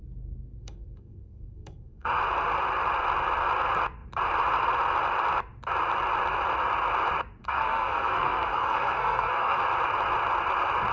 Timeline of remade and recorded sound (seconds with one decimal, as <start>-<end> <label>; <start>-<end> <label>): 0.0-0.6 recorded; 0.6-2.2 remade; 2.2-7.4 recorded; 7.4-9.6 remade; 9.6-10.9 recorded